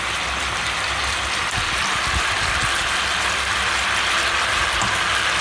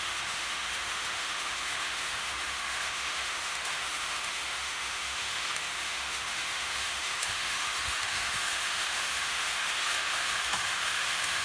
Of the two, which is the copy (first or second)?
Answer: second